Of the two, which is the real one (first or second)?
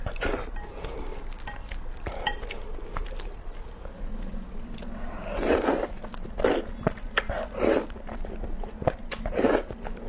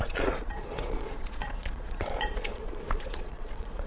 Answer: first